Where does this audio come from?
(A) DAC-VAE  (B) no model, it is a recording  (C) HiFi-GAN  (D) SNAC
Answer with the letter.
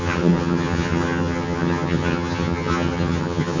C